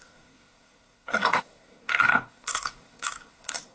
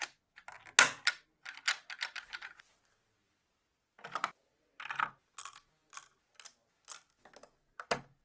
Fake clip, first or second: first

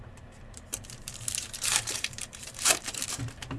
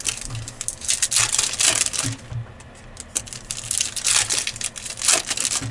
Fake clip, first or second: first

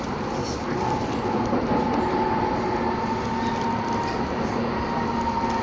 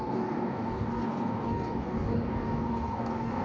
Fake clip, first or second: second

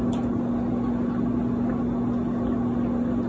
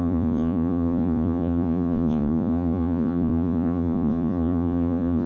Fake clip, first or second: second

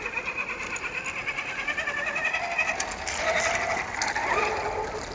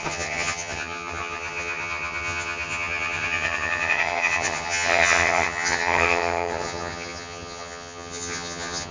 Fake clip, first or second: second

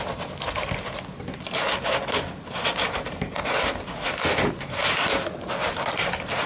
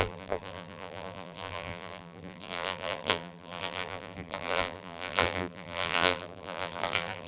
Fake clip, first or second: second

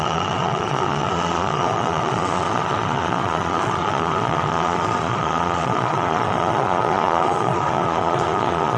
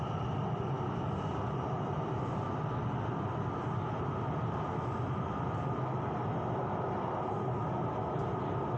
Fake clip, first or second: first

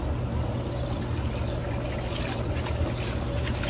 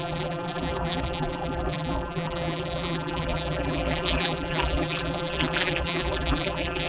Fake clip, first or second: second